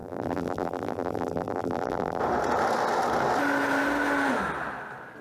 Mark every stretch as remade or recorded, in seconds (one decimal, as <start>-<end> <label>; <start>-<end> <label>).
0.0-2.2 remade; 2.2-5.2 recorded